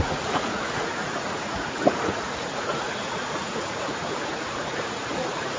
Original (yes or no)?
no